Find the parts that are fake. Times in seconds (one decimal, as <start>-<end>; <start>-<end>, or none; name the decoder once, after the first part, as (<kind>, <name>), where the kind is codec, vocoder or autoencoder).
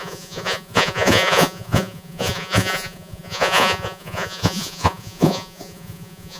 0.0-6.4 (vocoder, Vocos)